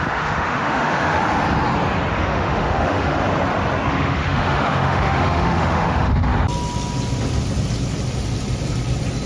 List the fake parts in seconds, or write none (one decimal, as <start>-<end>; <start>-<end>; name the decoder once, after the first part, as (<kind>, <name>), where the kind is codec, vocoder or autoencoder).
0.0-1.2 (autoencoder, DAC-VAE); 2.1-3.2; 3.9-6.3